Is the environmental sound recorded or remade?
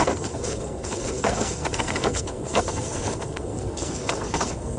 remade